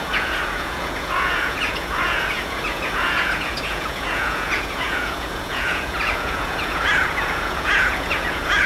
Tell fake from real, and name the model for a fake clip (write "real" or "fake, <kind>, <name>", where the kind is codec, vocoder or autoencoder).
fake, vocoder, Vocos